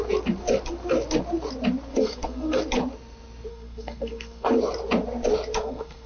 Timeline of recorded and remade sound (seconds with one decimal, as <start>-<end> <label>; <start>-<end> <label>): 0.0-1.9 recorded; 1.9-2.6 remade; 2.6-3.5 recorded; 3.5-4.5 remade; 4.5-5.6 recorded; 5.6-6.1 remade